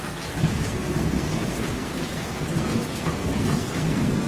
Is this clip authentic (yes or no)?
no